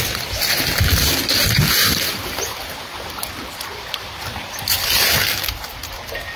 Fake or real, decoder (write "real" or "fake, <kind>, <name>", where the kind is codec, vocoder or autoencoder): fake, vocoder, BigVGAN v2